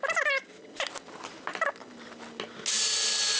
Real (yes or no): yes